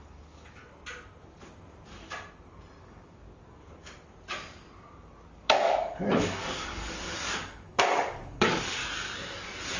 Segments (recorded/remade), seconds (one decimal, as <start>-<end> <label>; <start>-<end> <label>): 0.0-0.6 remade; 0.6-2.8 recorded; 2.8-3.3 remade; 3.3-5.4 recorded; 5.4-8.8 remade; 8.8-9.8 recorded